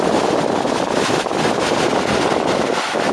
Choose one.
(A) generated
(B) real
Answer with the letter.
B